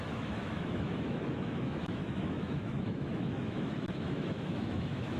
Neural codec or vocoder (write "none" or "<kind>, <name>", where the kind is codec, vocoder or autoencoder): autoencoder, DAC-VAE